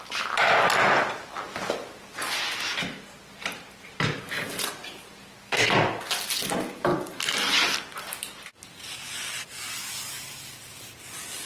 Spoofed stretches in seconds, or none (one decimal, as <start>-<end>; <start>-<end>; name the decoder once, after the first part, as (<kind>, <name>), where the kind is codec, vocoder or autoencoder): none